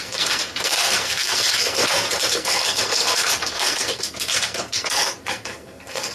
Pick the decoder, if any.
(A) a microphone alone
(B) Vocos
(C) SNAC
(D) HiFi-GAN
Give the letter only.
C